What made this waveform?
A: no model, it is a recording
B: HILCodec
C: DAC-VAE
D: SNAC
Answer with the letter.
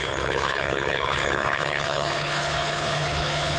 B